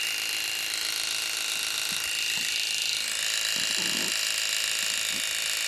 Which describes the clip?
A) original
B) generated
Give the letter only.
A